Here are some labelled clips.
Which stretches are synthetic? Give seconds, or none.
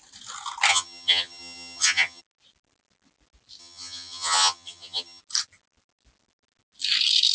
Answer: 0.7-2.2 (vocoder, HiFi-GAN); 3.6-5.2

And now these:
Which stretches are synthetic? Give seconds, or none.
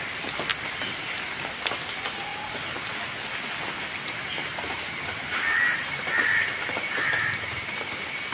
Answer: none